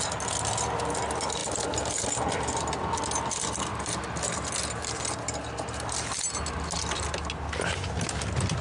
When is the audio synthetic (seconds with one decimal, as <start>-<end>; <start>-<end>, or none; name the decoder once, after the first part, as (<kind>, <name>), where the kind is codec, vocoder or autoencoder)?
none